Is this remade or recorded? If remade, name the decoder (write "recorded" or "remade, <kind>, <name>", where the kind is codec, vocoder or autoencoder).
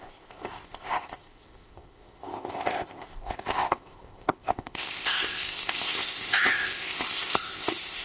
remade, codec, ZipCodec